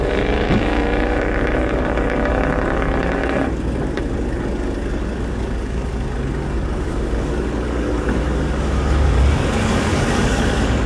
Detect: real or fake fake